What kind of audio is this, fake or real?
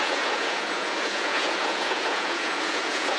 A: fake